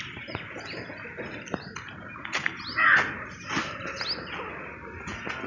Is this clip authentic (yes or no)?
yes